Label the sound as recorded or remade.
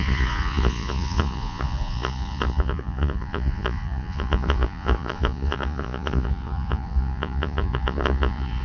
remade